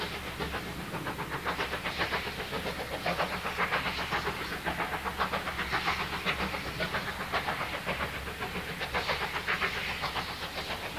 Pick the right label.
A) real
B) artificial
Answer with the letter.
A